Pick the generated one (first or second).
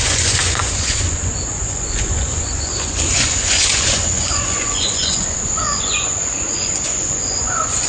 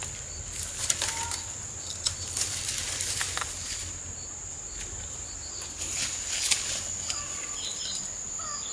first